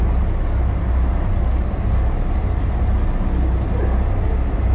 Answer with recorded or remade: recorded